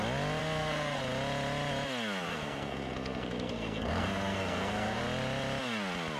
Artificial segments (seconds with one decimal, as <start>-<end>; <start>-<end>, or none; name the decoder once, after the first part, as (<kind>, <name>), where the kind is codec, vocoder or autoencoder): 0.4-1.0 (codec, SNAC); 2.3-5.0